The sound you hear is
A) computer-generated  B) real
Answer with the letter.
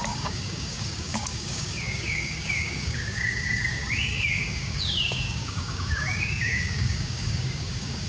A